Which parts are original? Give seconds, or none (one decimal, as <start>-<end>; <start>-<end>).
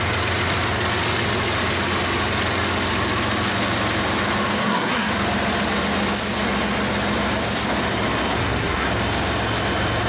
0.0-4.6; 5.1-8.4; 8.9-10.1